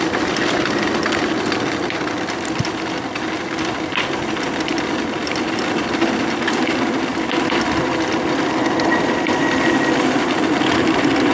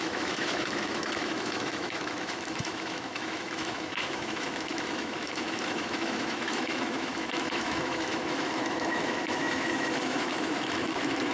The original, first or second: first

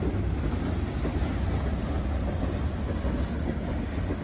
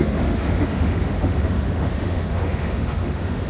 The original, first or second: first